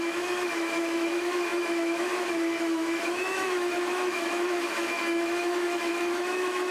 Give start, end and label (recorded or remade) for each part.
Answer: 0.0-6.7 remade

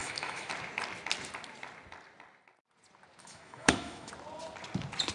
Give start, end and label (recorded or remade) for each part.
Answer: 0.0-0.5 remade; 0.5-3.2 recorded; 3.2-4.1 remade; 4.1-5.1 recorded

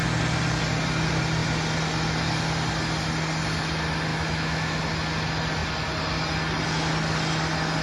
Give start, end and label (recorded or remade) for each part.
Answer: 0.0-4.1 recorded; 4.1-4.8 remade; 4.8-7.8 recorded

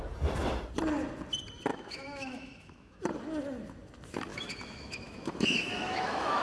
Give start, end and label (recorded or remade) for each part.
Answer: 0.0-1.7 recorded; 1.7-3.0 remade; 3.0-4.3 recorded; 4.3-6.4 remade

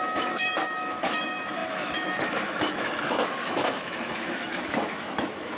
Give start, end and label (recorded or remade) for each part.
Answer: 0.0-5.6 remade

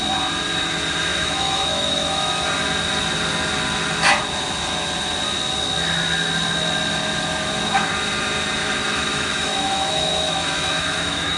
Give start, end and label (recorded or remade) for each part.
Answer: 0.0-1.1 recorded; 1.1-2.3 remade; 2.3-8.6 recorded; 8.6-11.4 remade

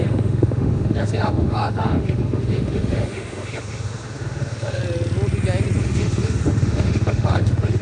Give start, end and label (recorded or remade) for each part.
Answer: 0.0-4.8 remade; 4.8-5.8 recorded; 5.8-7.8 remade

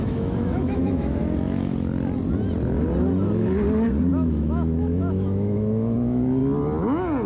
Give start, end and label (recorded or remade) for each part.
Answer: 0.0-1.2 remade; 1.2-4.1 recorded; 4.1-6.4 remade; 6.4-7.3 recorded